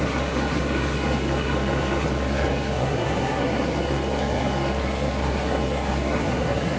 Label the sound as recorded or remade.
remade